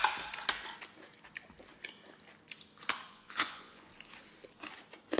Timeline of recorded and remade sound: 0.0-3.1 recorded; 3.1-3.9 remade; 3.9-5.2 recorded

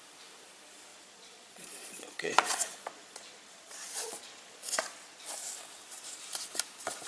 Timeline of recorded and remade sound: 0.0-0.9 recorded; 0.9-5.2 remade; 5.2-7.1 recorded

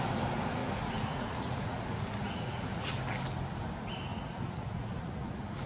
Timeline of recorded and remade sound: 0.0-0.6 recorded; 0.6-3.0 remade; 3.0-4.1 recorded; 4.1-5.7 remade

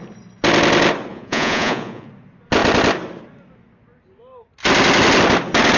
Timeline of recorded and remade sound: 0.0-1.1 recorded; 1.1-2.1 remade; 2.1-5.8 recorded

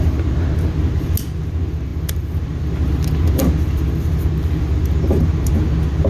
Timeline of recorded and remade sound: 0.0-6.1 recorded